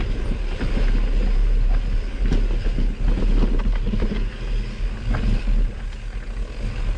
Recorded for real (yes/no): yes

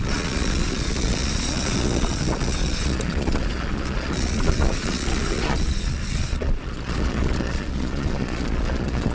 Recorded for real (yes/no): no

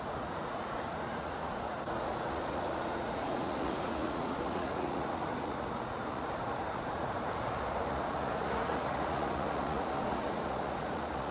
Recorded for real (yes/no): no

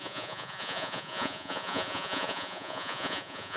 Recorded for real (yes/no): no